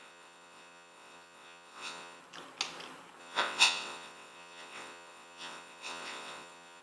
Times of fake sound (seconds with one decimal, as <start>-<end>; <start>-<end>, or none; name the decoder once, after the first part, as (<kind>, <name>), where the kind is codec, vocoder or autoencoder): 0.0-2.2 (vocoder, WaveNeXt); 3.2-6.8